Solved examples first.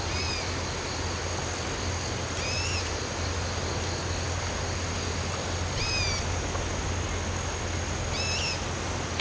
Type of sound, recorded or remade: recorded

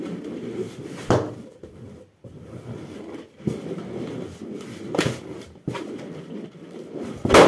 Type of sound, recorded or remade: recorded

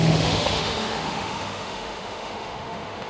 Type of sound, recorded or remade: remade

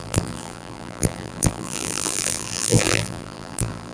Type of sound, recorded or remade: remade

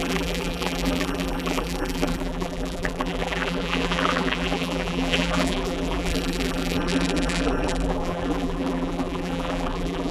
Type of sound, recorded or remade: remade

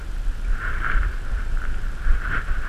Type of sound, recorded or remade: recorded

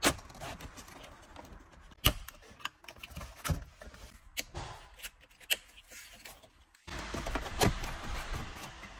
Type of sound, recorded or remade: recorded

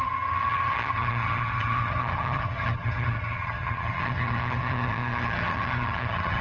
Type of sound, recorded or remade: remade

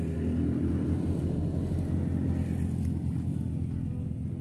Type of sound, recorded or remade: recorded